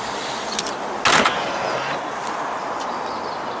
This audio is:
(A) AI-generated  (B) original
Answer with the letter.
B